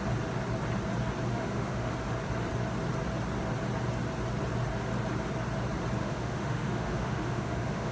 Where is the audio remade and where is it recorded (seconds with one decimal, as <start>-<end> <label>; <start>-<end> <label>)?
0.0-1.3 recorded; 1.3-1.9 remade; 1.9-6.0 recorded; 6.0-7.9 remade